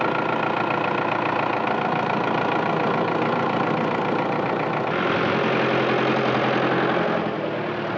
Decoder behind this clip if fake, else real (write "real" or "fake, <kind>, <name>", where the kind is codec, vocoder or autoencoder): real